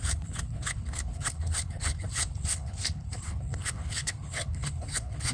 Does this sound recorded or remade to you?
remade